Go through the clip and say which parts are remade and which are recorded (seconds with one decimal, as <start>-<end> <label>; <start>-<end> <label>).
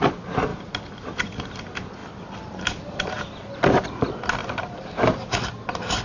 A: 0.0-0.5 recorded; 0.5-1.6 remade; 1.6-2.0 recorded; 2.0-3.2 remade; 3.2-4.4 recorded; 4.4-5.5 remade; 5.5-6.0 recorded